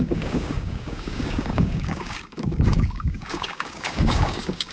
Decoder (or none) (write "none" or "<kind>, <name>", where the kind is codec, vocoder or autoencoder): codec, DAC